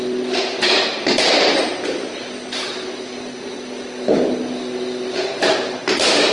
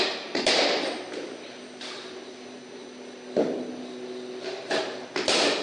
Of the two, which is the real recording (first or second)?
second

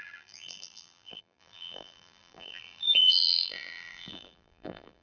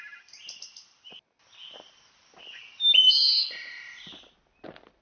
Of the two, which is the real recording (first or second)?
second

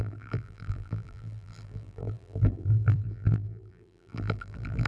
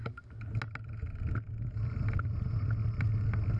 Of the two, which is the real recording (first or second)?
second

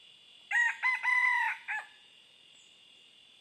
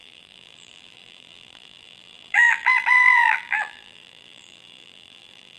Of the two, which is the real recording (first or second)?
first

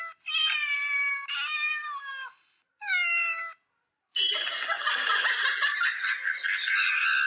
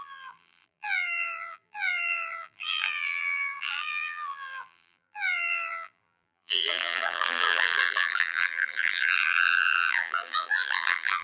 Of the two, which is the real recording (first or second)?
first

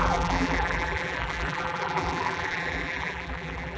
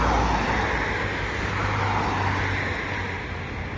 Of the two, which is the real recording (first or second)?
second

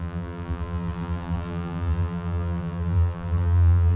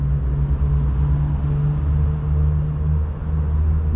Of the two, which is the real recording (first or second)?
second